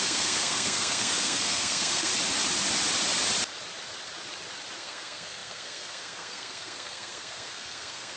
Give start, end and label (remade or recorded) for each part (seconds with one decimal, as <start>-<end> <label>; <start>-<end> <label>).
0.0-2.1 remade; 2.1-4.8 recorded; 4.8-8.2 remade